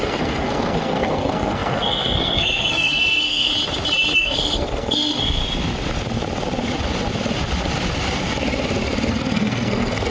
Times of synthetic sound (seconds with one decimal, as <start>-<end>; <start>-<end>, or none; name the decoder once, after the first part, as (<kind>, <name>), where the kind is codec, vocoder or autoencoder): 0.0-3.5 (codec, SNAC); 4.2-5.4; 9.1-10.1